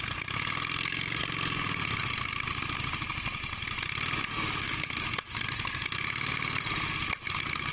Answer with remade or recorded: recorded